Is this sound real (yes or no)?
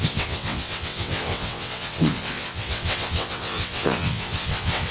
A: no